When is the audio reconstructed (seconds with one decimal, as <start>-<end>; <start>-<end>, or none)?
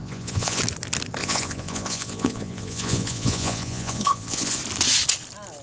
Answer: 0.0-0.6; 1.2-4.6